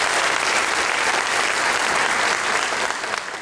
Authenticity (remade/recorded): recorded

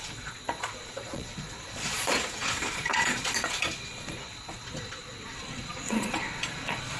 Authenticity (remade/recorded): remade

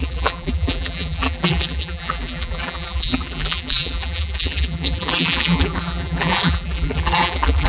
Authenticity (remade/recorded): remade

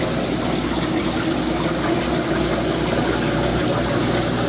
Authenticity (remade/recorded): recorded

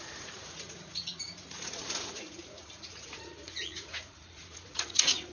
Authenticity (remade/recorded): remade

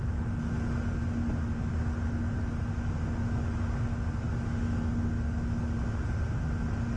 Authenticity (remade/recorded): recorded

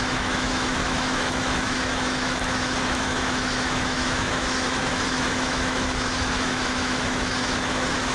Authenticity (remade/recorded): remade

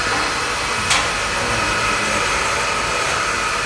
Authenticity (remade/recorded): recorded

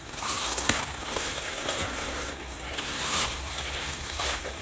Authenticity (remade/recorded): remade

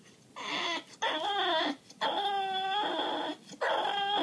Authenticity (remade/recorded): recorded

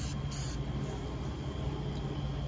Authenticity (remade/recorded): recorded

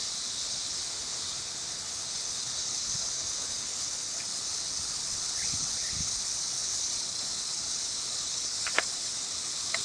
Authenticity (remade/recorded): remade